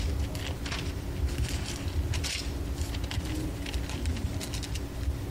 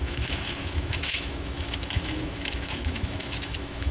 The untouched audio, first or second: first